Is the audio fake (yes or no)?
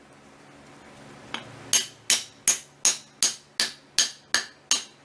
no